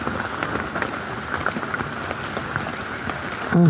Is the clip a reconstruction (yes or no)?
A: no